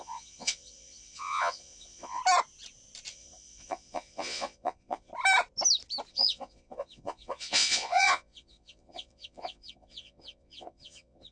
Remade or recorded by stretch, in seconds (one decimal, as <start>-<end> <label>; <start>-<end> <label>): 0.0-2.2 remade; 2.2-3.1 recorded; 3.1-5.1 remade; 5.1-6.1 recorded; 6.1-11.3 remade